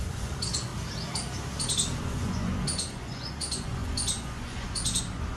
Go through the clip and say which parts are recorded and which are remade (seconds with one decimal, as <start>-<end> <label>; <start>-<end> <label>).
0.0-0.7 remade; 0.7-2.0 recorded; 2.0-5.4 remade